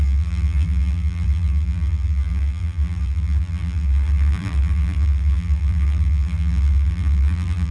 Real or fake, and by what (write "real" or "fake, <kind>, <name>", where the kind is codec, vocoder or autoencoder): fake, vocoder, BigVGAN v2